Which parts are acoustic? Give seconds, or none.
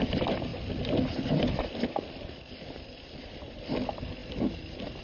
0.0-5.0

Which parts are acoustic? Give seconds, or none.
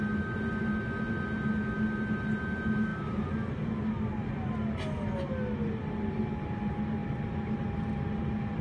0.0-8.6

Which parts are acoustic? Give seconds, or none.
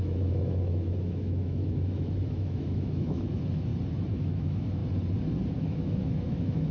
3.7-4.2; 4.8-5.6